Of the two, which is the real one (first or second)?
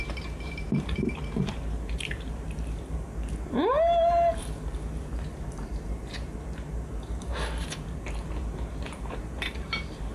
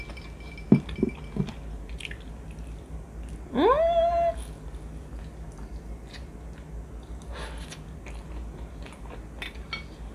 second